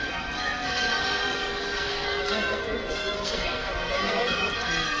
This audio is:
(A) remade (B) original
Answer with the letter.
A